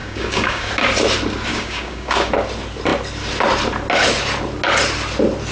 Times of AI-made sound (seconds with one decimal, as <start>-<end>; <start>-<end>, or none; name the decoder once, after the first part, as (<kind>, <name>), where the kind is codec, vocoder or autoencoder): 0.0-0.7 (codec, DAC); 1.5-2.3